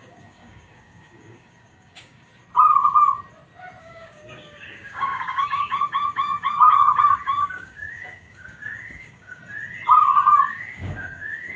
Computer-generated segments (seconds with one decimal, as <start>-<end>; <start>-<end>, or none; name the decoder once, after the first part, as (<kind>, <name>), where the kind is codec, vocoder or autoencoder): 0.0-2.3 (codec, DAC); 3.8-9.4; 10.5-11.6